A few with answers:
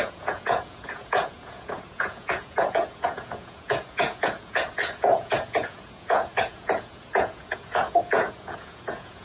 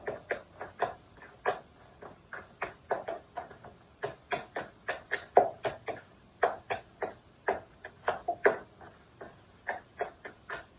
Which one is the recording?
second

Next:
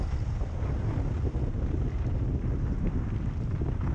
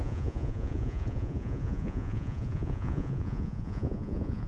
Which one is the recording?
first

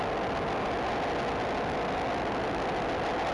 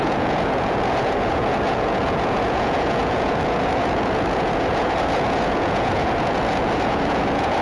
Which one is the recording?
first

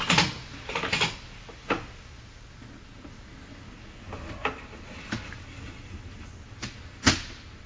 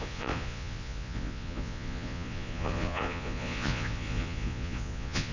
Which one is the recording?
first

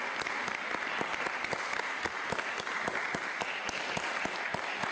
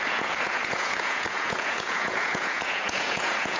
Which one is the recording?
first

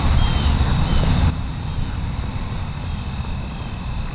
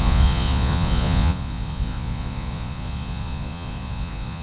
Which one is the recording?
first